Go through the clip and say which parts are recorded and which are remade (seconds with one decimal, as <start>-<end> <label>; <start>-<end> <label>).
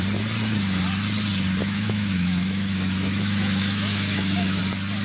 0.0-1.6 recorded; 1.6-4.6 remade; 4.6-5.0 recorded